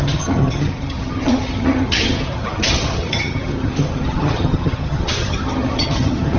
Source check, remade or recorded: remade